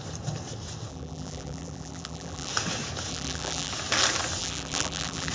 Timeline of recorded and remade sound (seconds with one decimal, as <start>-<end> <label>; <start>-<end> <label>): 0.0-0.9 recorded; 0.9-2.5 remade; 2.5-3.1 recorded; 3.1-3.7 remade; 3.7-4.4 recorded; 4.4-5.3 remade